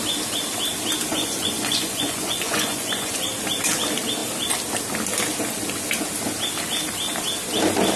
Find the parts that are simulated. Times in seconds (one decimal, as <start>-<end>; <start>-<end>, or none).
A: 1.1-3.3